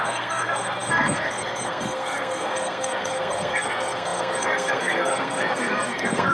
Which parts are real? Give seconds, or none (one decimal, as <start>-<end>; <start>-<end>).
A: none